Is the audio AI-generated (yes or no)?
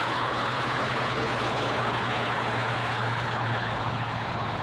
yes